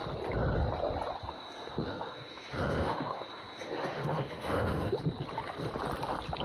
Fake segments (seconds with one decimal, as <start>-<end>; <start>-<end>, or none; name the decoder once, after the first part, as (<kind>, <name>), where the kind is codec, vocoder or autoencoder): 1.2-5.0 (autoencoder, DAC-VAE)